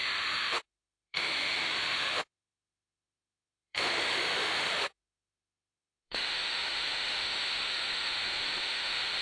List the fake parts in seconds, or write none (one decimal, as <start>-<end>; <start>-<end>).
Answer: 0.0-9.2